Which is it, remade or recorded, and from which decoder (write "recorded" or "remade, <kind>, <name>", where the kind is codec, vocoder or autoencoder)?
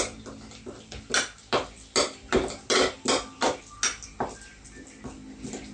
recorded